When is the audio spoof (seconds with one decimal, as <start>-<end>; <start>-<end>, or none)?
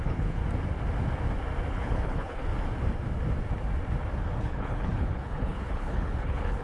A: 0.0-0.4; 1.7-2.5; 4.4-6.6